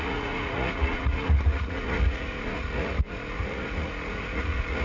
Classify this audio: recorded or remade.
remade